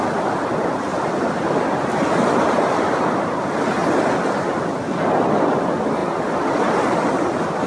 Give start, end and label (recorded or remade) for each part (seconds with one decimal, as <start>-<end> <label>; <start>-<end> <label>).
0.0-7.7 recorded